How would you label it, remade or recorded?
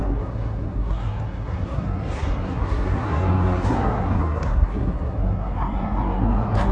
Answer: remade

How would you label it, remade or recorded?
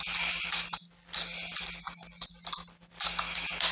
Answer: recorded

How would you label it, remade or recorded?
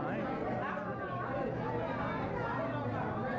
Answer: recorded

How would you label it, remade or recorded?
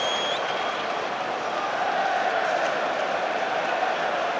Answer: recorded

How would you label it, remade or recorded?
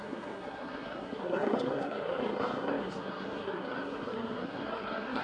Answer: remade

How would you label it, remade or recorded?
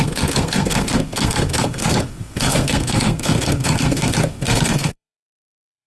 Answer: remade